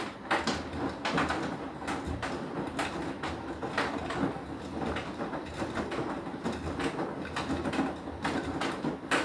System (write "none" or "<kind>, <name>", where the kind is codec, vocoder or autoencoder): none